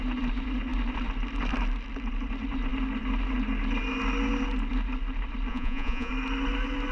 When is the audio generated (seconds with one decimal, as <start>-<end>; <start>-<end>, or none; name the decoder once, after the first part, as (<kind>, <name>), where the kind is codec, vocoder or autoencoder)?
5.5-6.1 (vocoder, Vocos)